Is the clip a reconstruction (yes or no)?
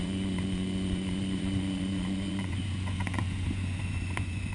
yes